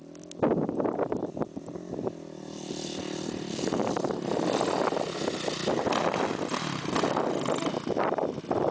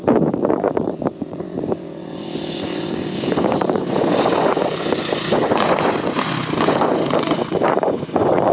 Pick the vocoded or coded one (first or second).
second